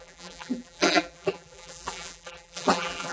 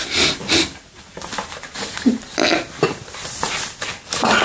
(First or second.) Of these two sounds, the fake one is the first